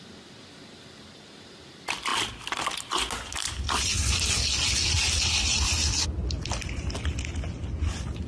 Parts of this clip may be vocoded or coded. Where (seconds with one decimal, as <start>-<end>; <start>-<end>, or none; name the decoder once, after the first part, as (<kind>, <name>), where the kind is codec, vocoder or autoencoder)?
none